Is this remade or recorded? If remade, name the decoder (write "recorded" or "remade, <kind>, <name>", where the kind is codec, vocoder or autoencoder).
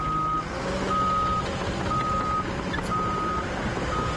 recorded